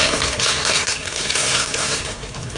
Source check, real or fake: fake